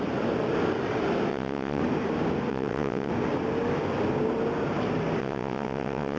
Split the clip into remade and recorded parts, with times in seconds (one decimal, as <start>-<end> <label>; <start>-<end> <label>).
0.0-1.3 recorded; 1.3-1.8 remade; 1.8-2.5 recorded; 2.5-3.1 remade; 3.1-5.2 recorded; 5.2-6.2 remade